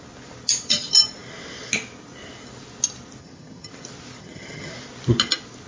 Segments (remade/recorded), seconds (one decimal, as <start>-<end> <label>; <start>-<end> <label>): 0.0-3.2 recorded; 3.2-3.7 remade; 3.7-4.2 recorded; 4.2-4.7 remade; 4.7-5.7 recorded